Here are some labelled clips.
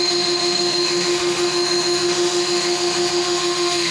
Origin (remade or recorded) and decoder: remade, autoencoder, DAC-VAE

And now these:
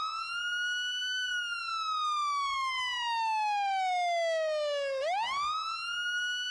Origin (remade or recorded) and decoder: recorded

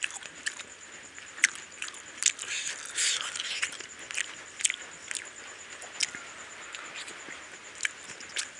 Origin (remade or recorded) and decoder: recorded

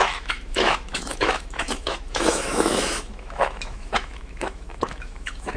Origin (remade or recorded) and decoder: remade, autoencoder, DAC-VAE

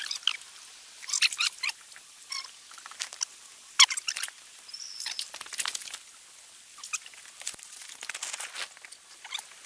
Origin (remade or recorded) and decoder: recorded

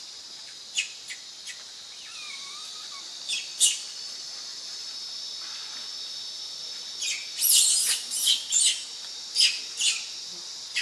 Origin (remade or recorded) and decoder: recorded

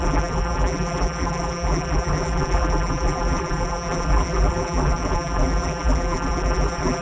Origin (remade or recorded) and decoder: remade, vocoder, BigVGAN v2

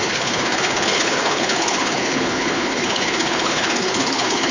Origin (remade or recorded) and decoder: remade, codec, HILCodec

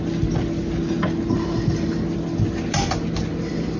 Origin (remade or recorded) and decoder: recorded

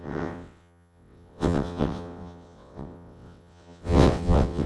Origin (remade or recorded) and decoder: remade, vocoder, WaveNeXt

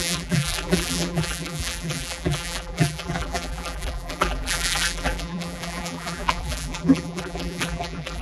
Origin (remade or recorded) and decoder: remade, vocoder, BigVGAN v2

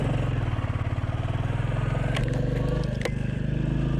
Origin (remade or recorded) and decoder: recorded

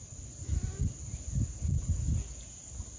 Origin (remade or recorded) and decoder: recorded